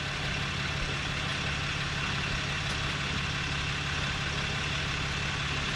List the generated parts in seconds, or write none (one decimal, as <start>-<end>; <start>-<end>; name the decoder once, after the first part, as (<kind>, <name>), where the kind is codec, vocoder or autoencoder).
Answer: none